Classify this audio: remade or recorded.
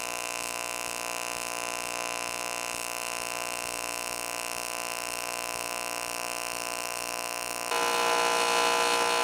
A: recorded